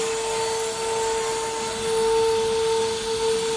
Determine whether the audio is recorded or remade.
recorded